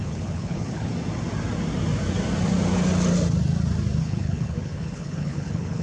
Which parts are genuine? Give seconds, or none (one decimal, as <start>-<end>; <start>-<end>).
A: 0.9-4.0